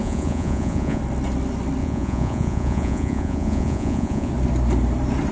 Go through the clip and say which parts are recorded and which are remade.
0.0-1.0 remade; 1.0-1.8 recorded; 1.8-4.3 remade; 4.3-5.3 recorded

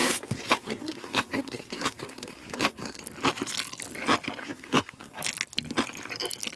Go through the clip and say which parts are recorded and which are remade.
0.0-3.0 remade; 3.0-4.4 recorded; 4.4-5.2 remade; 5.2-6.6 recorded